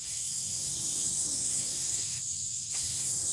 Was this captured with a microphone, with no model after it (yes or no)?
no